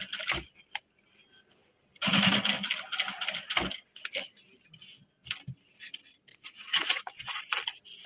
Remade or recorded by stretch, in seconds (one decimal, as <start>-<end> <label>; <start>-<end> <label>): 0.0-6.3 recorded; 6.3-7.4 remade; 7.4-8.1 recorded